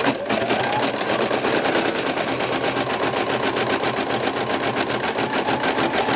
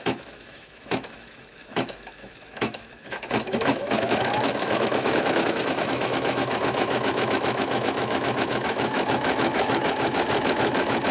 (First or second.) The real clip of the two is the first